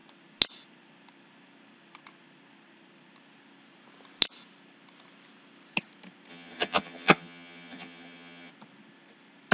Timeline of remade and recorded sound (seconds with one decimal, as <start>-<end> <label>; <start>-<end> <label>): 0.0-6.3 recorded; 6.3-8.5 remade; 8.5-9.5 recorded